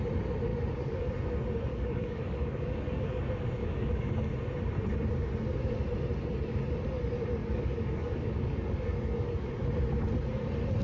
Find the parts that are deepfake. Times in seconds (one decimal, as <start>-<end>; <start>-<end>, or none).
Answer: 0.5-1.1; 1.7-3.2; 3.6-4.1; 7.4-9.5